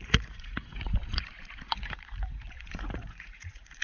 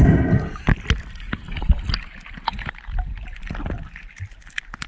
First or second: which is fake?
first